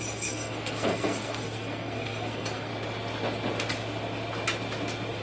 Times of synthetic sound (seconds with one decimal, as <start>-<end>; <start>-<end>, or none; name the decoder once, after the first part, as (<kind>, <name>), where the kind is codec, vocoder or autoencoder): 0.0-2.7 (codec, SNAC)